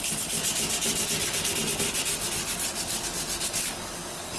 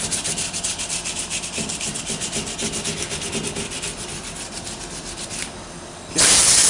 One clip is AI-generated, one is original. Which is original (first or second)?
first